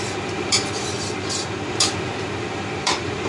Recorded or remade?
remade